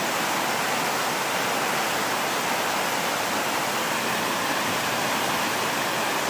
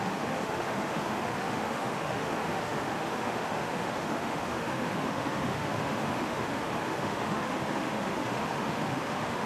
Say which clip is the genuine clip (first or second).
first